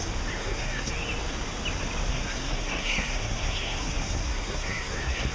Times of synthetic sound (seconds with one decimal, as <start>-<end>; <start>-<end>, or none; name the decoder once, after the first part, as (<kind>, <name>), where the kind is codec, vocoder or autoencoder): 0.4-0.9 (codec, SNAC); 2.1-5.3